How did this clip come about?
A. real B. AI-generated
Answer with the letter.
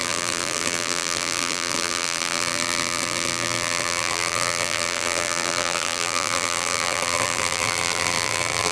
B